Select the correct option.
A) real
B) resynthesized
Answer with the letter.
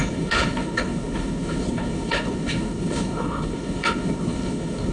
B